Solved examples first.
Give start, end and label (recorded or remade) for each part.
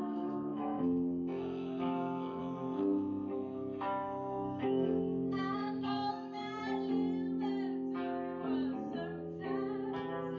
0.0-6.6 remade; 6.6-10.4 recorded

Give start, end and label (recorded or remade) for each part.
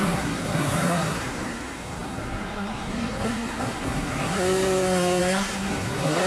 0.0-6.3 remade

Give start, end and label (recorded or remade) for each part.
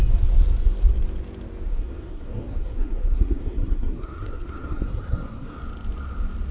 0.0-1.7 recorded; 1.7-5.6 remade; 5.6-6.5 recorded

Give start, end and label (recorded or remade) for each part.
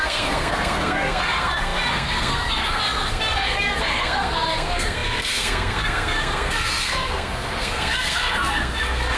0.0-9.2 remade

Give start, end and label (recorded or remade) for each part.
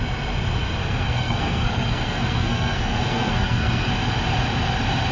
0.0-0.8 recorded; 0.8-3.9 remade; 3.9-5.1 recorded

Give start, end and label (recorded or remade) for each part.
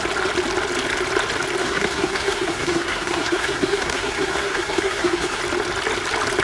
0.0-1.6 recorded; 1.6-5.4 remade; 5.4-6.4 recorded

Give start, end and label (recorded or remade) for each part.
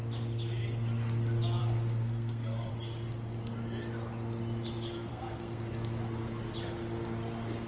0.0-1.6 recorded; 1.6-2.7 remade; 2.7-5.1 recorded; 5.1-5.7 remade; 5.7-7.7 recorded